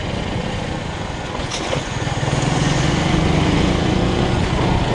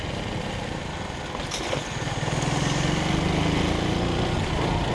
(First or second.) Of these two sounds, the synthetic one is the first